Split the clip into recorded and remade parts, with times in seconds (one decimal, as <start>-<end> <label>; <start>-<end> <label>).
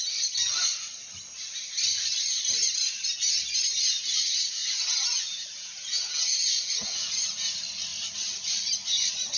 0.0-4.6 recorded; 4.6-7.5 remade; 7.5-9.4 recorded